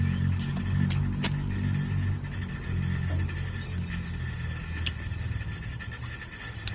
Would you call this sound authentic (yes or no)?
yes